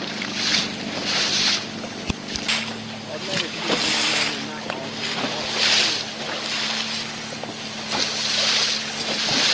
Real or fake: real